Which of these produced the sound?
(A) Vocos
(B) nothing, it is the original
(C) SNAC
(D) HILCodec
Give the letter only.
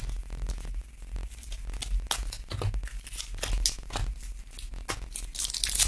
B